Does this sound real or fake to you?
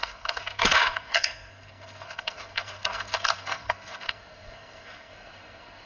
fake